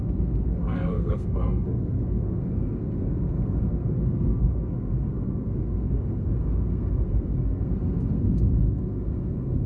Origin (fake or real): fake